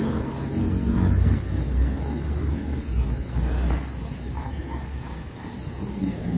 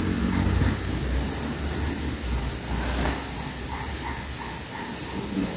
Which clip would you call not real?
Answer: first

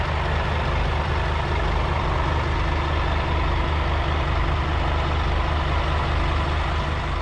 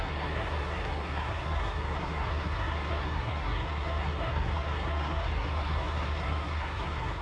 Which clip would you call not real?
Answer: second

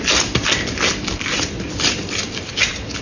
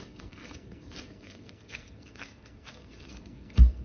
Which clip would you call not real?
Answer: second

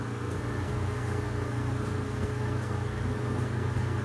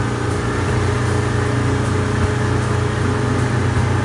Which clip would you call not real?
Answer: first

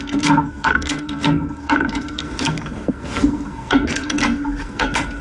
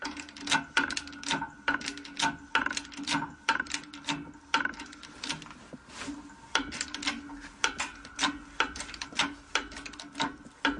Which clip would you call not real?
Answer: first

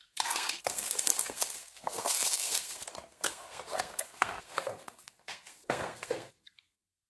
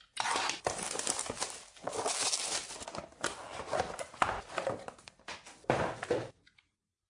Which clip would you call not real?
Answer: first